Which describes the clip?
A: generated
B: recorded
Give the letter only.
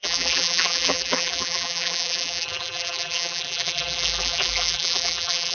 A